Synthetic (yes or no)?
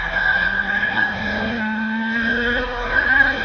yes